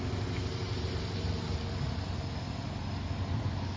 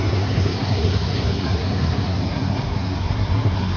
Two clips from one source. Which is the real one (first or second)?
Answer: first